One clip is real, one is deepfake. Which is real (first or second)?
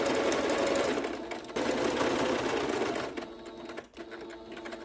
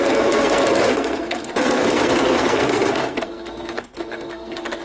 first